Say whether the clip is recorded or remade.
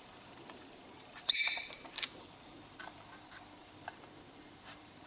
remade